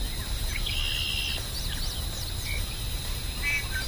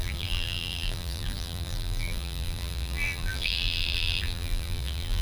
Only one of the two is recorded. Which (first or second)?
first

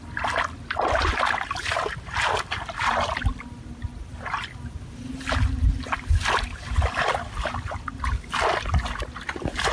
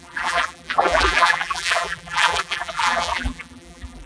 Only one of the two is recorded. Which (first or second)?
first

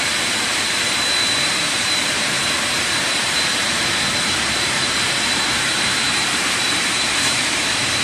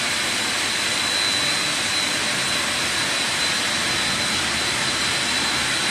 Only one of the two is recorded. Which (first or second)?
second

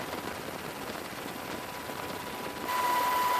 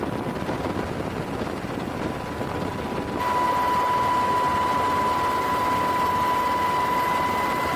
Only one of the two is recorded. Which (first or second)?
second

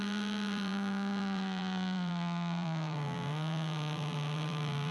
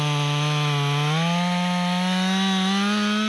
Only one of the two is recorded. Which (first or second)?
second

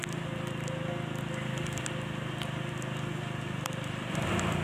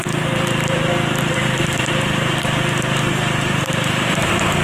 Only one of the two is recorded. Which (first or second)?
first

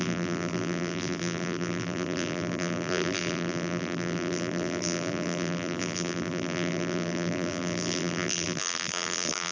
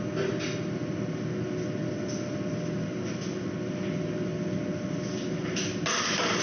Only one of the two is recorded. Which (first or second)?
second